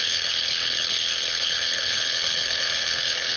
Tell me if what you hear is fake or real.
fake